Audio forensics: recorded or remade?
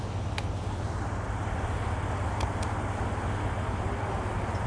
recorded